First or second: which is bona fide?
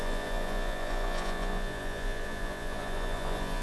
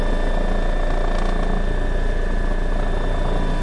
second